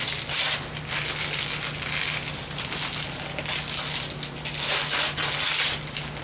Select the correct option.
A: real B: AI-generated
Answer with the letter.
A